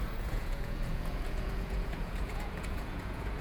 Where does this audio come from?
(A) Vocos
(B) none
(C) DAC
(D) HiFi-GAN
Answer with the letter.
A